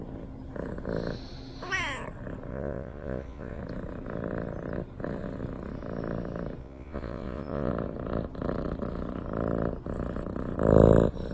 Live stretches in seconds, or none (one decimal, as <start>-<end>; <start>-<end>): 0.0-2.5; 3.6-6.6; 7.7-11.3